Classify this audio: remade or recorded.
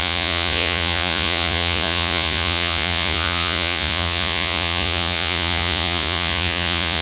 remade